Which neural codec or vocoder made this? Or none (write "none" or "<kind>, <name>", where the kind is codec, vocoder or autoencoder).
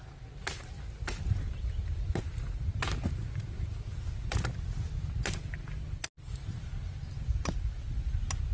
none